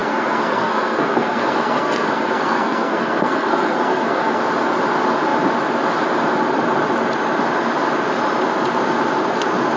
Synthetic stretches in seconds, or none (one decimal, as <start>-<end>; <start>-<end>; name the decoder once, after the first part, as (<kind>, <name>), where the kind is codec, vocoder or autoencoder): 0.0-4.4 (codec, SNAC)